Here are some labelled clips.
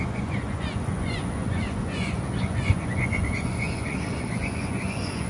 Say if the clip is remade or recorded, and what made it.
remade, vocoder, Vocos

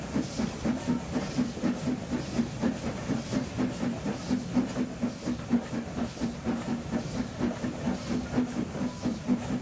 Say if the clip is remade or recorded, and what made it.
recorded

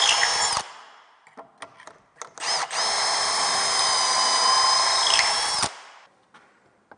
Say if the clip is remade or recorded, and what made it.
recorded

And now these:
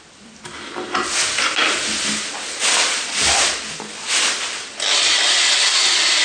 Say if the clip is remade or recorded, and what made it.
recorded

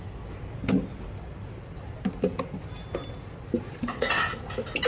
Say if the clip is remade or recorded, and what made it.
recorded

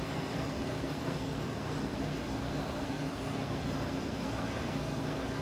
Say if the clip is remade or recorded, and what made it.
remade, codec, SNAC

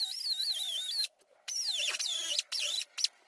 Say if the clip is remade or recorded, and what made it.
recorded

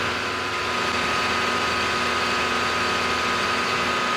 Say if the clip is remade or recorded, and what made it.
recorded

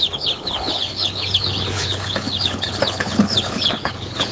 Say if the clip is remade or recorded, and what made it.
remade, codec, HILCodec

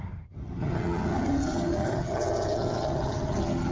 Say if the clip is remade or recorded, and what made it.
remade, vocoder, HiFi-GAN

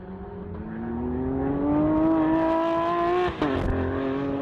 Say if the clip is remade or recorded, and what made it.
recorded